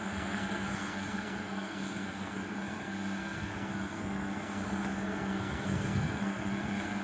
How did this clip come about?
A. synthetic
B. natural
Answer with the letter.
A